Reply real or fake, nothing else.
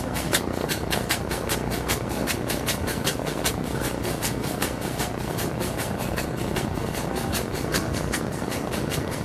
fake